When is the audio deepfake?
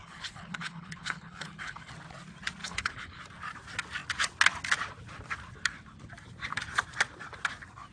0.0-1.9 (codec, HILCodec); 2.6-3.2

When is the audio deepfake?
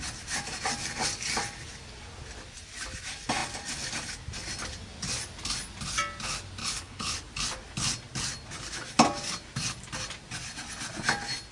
6.6-7.2 (codec, HILCodec)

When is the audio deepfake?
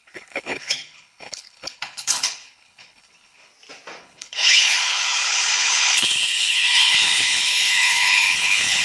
0.0-3.5 (codec, HILCodec); 4.0-8.8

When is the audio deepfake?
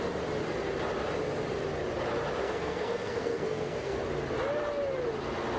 2.4-4.0 (codec, SNAC)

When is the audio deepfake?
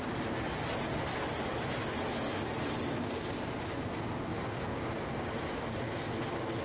none